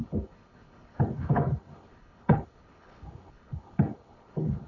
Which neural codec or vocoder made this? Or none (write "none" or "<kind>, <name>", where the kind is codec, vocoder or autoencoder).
codec, HILCodec